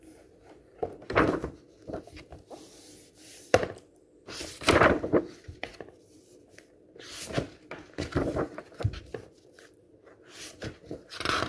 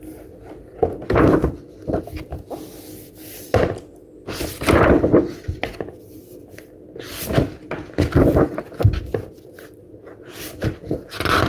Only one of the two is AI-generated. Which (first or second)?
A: first